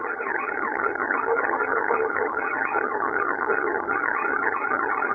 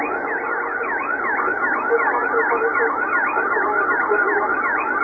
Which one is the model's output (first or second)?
first